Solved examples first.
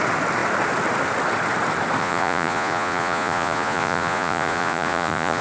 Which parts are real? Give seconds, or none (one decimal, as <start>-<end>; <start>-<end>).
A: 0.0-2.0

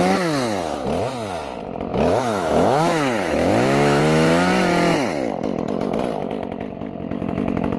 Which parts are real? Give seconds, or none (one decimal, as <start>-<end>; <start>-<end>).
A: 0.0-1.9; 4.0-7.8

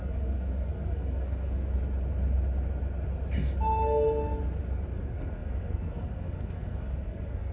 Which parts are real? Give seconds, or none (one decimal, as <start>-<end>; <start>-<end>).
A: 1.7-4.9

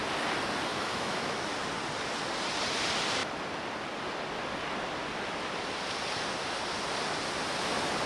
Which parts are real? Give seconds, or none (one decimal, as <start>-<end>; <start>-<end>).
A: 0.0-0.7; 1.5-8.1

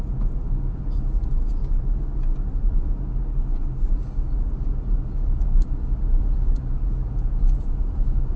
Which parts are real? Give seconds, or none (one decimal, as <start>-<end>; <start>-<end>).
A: 1.6-6.2